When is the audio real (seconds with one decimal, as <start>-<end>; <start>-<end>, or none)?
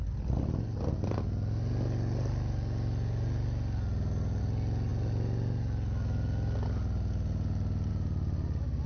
0.0-8.9